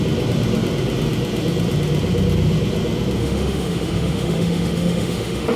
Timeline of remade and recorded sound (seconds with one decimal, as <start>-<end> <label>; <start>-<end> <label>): 0.0-3.2 recorded; 3.2-5.6 remade